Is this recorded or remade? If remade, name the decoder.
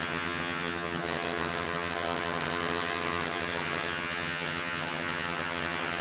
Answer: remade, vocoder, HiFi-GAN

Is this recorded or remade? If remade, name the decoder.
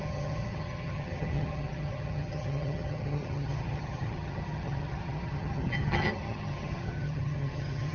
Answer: remade, vocoder, HiFi-GAN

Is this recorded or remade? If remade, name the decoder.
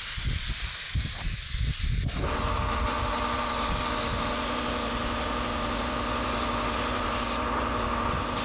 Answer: recorded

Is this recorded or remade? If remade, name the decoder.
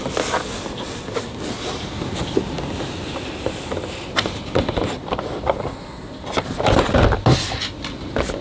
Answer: recorded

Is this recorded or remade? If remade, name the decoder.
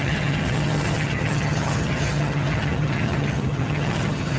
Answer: remade, vocoder, HiFi-GAN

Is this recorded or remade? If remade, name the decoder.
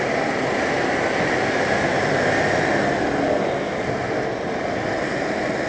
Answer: recorded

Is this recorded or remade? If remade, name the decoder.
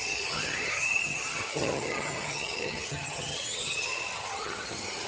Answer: remade, vocoder, HiFi-GAN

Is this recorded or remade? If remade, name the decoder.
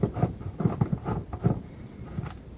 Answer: recorded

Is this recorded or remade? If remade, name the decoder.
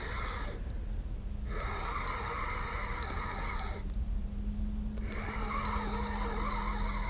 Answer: recorded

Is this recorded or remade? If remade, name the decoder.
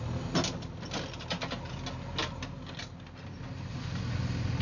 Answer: recorded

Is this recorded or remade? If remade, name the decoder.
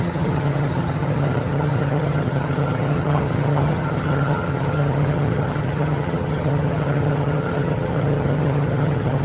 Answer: remade, vocoder, HiFi-GAN